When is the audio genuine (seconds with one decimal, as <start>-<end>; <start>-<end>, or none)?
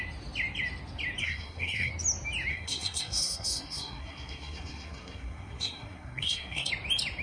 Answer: 0.0-1.2; 1.9-2.5; 6.7-7.2